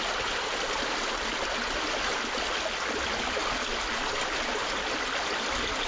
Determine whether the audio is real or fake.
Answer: real